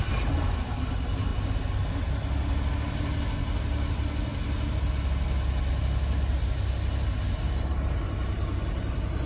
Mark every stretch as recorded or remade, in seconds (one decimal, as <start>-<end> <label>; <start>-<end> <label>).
0.0-9.3 recorded